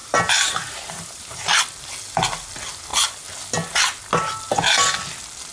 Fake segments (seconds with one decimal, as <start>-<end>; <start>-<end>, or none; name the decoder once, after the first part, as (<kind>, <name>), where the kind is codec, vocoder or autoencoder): 0.0-1.6 (vocoder, BigVGAN v2)